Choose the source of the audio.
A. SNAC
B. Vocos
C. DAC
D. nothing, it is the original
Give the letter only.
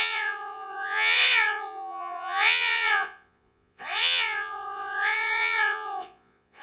B